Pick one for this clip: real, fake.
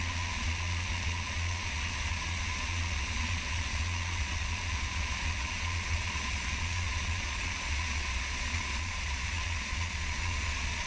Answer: fake